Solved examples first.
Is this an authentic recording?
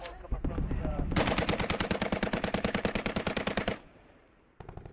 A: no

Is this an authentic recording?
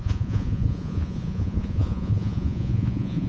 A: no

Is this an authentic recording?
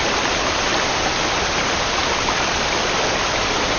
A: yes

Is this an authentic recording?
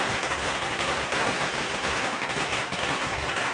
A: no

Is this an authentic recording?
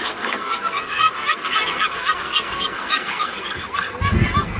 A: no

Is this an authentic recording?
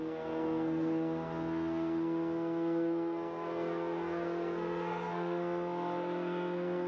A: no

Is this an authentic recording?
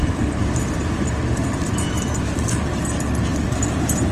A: no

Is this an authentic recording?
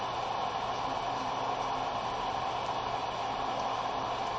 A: yes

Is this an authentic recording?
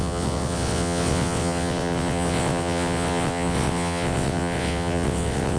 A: no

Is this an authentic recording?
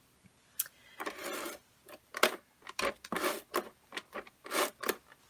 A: yes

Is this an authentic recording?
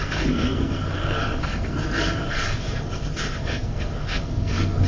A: no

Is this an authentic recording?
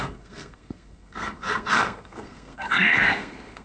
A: no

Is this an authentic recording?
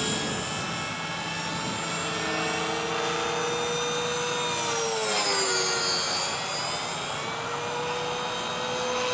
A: yes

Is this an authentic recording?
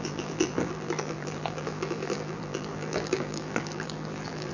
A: no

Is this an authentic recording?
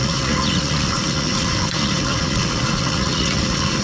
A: no